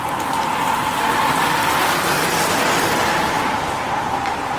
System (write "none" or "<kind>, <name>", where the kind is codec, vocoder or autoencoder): none